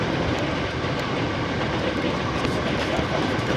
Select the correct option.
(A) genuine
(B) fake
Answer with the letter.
B